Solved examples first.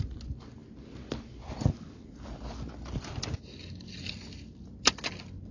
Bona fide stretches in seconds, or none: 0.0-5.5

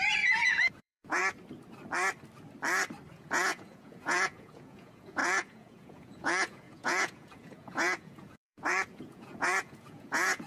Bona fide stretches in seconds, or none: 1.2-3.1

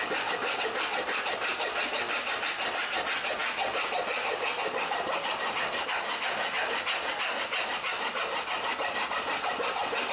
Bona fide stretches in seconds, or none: 0.0-10.1

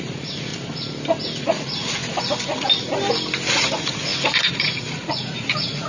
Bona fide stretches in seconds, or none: 0.5-1.4; 2.0-3.5

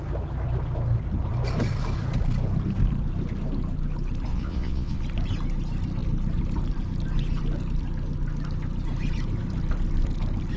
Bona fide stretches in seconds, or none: 0.0-4.3; 5.0-10.6

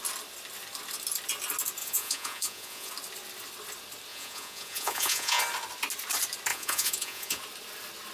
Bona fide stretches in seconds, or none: 0.0-1.8; 2.9-4.1; 5.4-6.5; 7.4-8.1

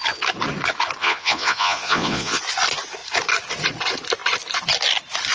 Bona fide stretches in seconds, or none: 0.0-1.0; 2.4-5.3